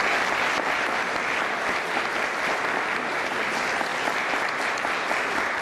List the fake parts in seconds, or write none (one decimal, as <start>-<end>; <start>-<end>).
none